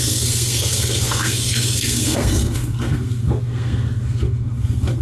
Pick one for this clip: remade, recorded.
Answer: remade